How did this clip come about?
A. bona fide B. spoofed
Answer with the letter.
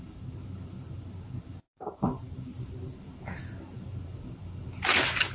A